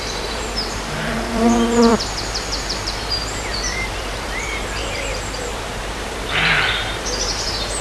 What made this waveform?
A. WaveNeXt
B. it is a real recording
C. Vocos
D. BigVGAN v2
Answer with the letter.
D